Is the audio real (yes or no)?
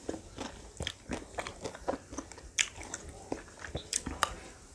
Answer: yes